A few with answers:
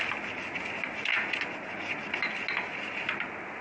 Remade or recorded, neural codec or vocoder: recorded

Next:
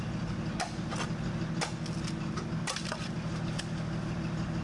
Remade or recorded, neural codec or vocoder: recorded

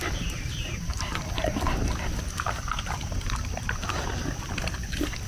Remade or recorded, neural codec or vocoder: recorded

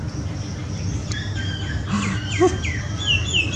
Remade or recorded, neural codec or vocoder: recorded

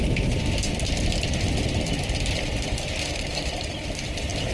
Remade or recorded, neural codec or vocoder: recorded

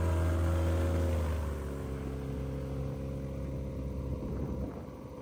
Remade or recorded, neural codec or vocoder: recorded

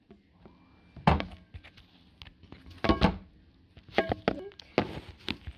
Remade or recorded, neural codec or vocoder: recorded